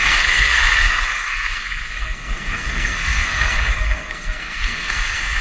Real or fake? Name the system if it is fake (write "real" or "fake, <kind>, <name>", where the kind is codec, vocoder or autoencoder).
fake, codec, SNAC